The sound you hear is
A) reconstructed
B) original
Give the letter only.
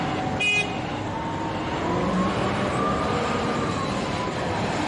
B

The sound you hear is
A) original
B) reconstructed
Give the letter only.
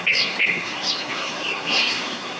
B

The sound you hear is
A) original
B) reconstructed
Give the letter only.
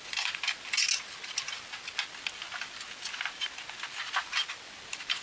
A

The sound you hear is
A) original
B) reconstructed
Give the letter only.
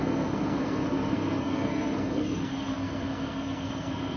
B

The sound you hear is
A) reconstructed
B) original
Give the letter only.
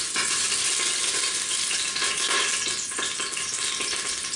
B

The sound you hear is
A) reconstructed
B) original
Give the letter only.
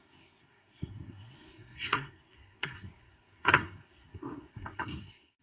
A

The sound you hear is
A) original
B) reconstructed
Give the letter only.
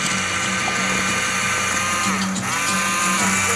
A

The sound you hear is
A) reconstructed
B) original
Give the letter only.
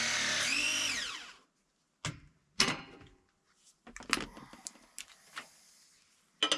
B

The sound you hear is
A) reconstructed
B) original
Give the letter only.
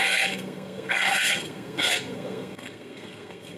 A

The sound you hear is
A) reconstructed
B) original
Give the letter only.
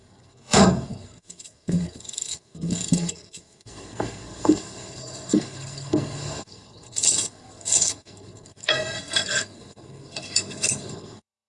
A